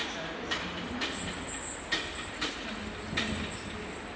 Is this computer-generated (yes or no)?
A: no